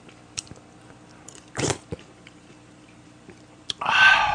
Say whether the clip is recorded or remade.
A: remade